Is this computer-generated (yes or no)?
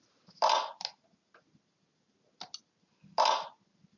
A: no